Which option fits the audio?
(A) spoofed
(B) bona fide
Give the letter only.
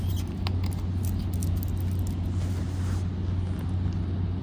B